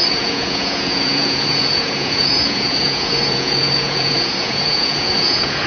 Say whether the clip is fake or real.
fake